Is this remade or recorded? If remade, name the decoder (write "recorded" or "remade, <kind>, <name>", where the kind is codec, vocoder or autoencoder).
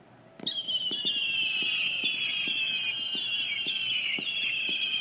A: recorded